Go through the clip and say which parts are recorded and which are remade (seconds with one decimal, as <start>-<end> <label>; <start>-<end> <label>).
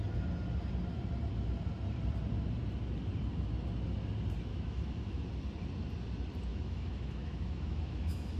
0.0-4.5 recorded; 4.5-5.2 remade; 5.2-6.5 recorded; 6.5-8.4 remade